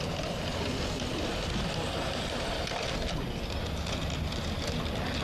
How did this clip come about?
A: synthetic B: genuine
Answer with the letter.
B